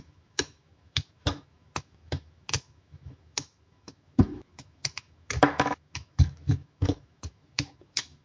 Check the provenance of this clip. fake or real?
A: fake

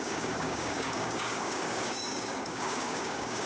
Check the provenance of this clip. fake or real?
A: fake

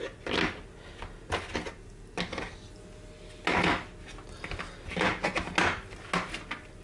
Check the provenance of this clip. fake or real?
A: real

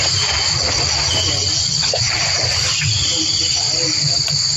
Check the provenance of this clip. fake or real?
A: fake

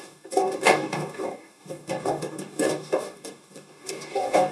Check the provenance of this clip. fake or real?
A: fake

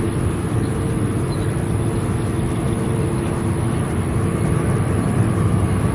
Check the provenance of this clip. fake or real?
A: real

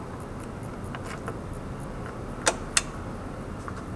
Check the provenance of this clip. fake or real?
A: real